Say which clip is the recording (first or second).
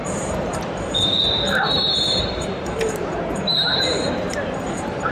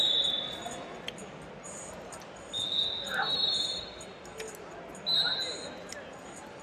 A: second